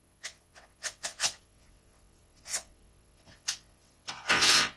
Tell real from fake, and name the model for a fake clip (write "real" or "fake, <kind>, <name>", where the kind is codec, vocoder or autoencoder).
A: fake, vocoder, WaveNeXt